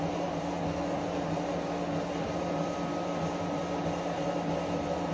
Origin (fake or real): real